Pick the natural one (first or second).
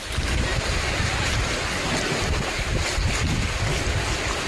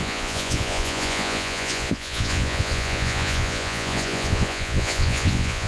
first